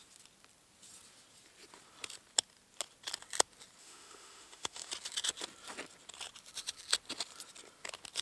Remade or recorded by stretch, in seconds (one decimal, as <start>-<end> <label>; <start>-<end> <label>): 0.0-3.8 recorded; 3.8-4.9 remade; 4.9-8.2 recorded